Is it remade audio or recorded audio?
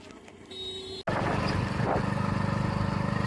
recorded